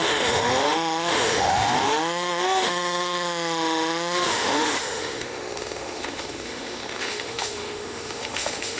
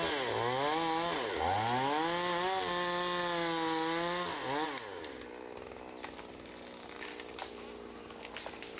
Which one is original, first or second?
second